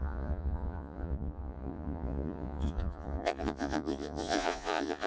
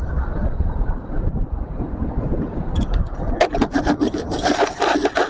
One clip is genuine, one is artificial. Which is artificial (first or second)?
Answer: first